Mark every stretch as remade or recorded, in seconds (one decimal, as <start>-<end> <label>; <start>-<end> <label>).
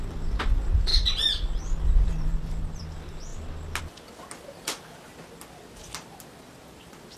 0.0-2.3 recorded; 2.3-2.8 remade; 2.8-7.2 recorded